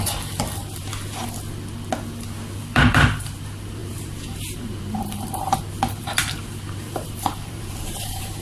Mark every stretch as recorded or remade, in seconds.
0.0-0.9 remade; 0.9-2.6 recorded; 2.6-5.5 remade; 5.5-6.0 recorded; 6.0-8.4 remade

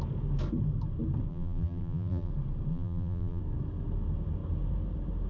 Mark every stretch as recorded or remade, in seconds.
0.0-1.3 recorded; 1.3-2.3 remade; 2.3-2.7 recorded; 2.7-3.4 remade; 3.4-5.3 recorded

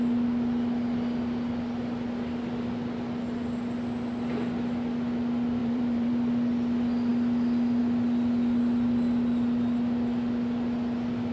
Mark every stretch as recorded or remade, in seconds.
0.0-5.6 recorded; 5.6-6.1 remade; 6.1-11.3 recorded

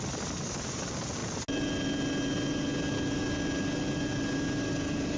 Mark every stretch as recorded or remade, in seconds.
0.0-5.2 recorded